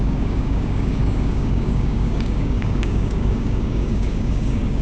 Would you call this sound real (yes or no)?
no